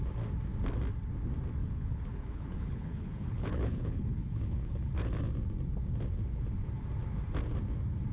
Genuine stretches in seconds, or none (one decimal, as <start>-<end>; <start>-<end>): 0.0-1.6; 4.9-8.1